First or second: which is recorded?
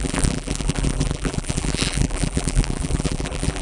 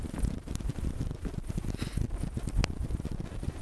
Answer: second